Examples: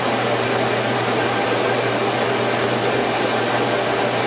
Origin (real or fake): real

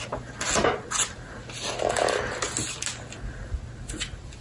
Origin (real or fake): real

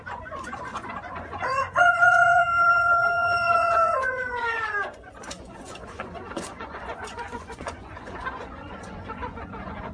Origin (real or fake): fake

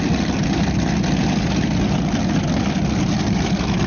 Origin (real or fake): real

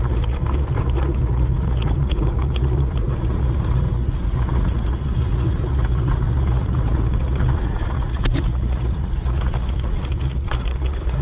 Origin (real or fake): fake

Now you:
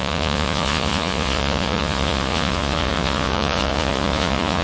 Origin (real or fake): fake